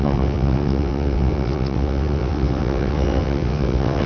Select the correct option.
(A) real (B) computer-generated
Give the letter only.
B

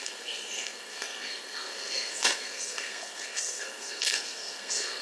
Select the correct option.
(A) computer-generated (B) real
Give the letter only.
A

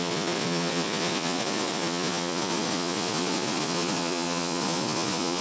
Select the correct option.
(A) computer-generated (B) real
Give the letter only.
A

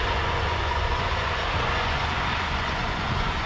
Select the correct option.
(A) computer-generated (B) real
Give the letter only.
A